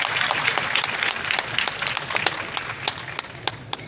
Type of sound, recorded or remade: recorded